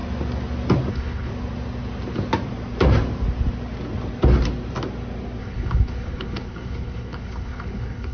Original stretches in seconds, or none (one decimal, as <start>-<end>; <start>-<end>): 0.0-0.9; 1.3-5.4